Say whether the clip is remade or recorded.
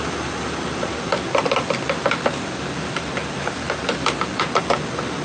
recorded